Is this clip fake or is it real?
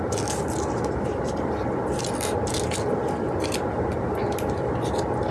real